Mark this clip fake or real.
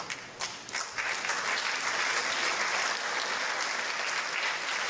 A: real